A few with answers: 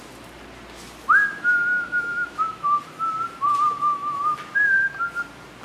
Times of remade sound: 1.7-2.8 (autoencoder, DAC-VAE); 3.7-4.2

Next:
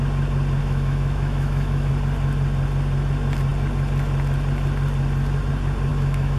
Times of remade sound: 0.6-1.9 (autoencoder, DAC-VAE); 5.9-6.4

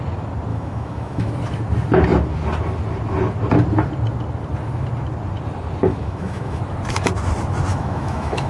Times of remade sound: 0.5-1.3 (autoencoder, DAC-VAE); 5.9-6.6; 7.7-8.5

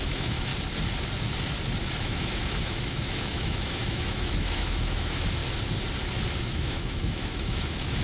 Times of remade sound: 0.0-0.5 (autoencoder, DAC-VAE); 2.0-5.4; 6.4-8.0